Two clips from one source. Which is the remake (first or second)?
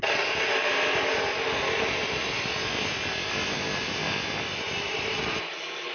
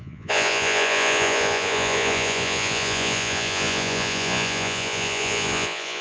second